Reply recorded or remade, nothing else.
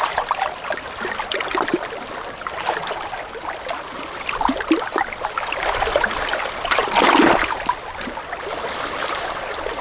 recorded